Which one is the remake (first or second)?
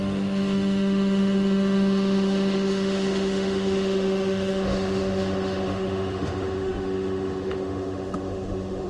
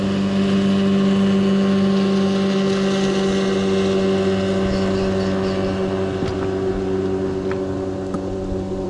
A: first